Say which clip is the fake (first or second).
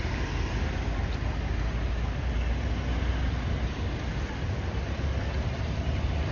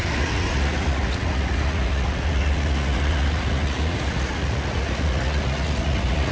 second